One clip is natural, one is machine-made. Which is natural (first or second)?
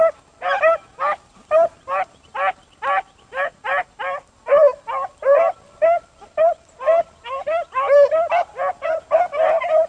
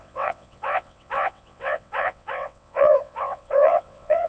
first